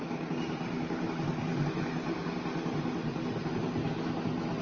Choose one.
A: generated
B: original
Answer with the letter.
B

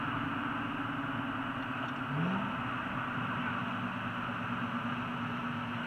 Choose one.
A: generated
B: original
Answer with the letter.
B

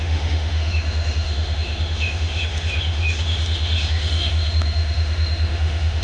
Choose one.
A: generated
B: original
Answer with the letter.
A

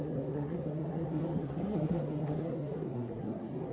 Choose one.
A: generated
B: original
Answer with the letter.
A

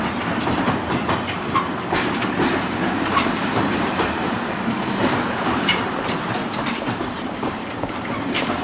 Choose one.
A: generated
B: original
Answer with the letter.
A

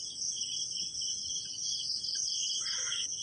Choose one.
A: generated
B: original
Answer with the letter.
B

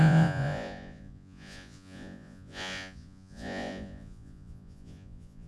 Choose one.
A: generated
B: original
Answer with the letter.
A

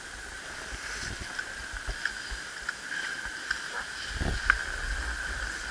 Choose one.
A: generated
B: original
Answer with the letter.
B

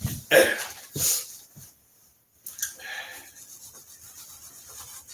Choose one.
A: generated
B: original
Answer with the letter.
B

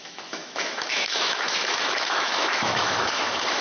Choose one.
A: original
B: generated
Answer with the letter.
B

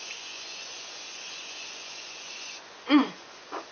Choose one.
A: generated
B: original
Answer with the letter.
A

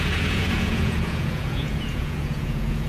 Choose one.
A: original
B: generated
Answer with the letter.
B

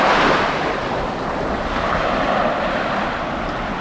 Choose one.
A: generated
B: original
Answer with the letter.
B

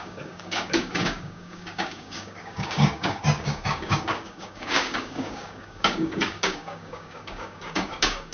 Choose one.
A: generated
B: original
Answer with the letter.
A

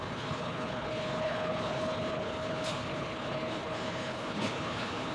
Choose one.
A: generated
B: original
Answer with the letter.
A